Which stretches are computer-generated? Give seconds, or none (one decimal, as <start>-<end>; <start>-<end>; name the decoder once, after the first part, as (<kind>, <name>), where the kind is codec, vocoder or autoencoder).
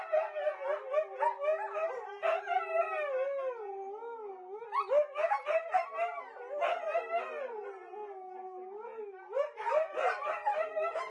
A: 1.8-2.5 (vocoder, BigVGAN v2)